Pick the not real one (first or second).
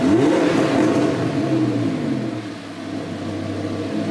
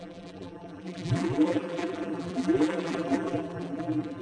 second